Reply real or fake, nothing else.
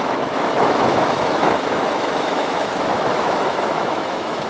fake